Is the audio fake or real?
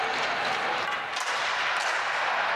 real